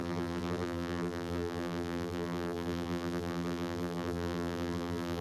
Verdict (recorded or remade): remade